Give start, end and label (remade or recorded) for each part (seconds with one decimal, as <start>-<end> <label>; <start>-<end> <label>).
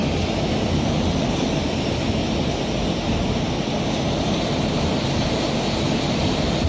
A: 0.0-6.7 recorded